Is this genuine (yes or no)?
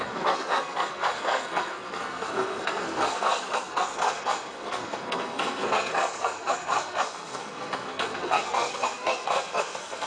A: no